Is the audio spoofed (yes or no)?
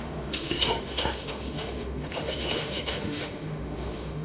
yes